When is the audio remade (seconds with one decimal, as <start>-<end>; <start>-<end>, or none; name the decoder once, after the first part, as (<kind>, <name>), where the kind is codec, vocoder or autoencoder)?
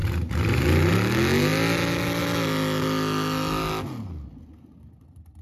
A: 0.0-0.9 (vocoder, BigVGAN v2)